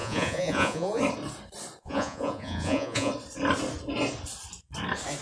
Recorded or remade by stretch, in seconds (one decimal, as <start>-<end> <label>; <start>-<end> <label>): 0.0-1.0 remade; 1.0-1.8 recorded; 1.8-3.1 remade; 3.1-5.2 recorded